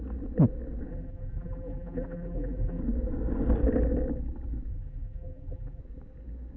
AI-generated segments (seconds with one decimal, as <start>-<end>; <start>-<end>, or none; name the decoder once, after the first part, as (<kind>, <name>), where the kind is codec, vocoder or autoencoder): 0.9-2.8 (vocoder, BigVGAN v2); 4.7-5.8